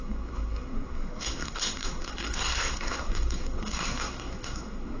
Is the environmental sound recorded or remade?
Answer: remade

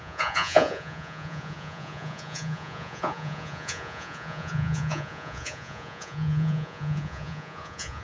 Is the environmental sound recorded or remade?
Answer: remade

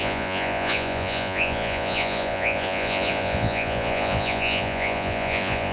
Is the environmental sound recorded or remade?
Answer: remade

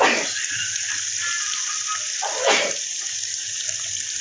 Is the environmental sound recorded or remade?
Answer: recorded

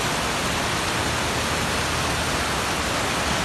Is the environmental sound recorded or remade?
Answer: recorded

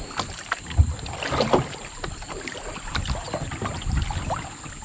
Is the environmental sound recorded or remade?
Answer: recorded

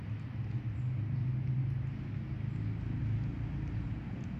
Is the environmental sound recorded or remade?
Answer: recorded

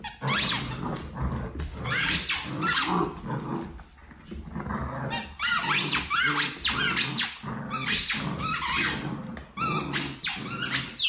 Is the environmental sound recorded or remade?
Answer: recorded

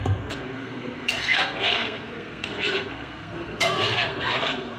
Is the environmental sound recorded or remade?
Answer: remade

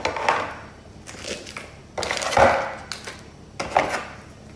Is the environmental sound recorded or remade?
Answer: recorded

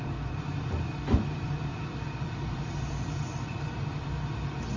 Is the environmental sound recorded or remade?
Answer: remade